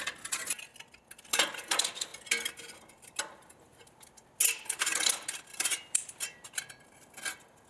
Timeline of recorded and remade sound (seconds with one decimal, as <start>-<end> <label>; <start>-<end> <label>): 0.0-5.5 recorded; 5.5-6.6 remade; 6.6-7.7 recorded